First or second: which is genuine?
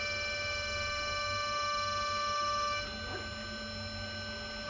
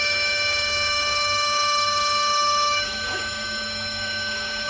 first